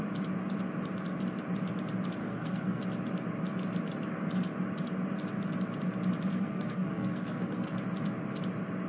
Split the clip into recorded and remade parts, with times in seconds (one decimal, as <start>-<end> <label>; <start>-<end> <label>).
0.0-2.2 recorded; 2.2-2.8 remade; 2.8-6.3 recorded; 6.3-7.8 remade; 7.8-8.9 recorded